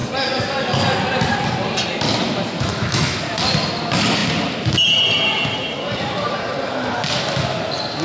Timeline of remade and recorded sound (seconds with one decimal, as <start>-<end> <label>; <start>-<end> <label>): 0.0-2.7 recorded; 2.7-3.2 remade; 3.2-8.0 recorded